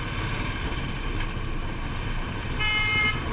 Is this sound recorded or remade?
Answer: recorded